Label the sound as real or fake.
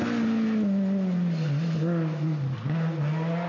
real